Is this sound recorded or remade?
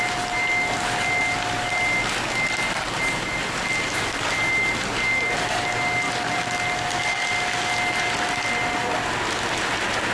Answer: recorded